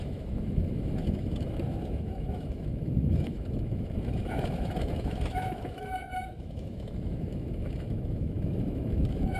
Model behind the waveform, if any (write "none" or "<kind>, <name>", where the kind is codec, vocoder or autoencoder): autoencoder, DAC-VAE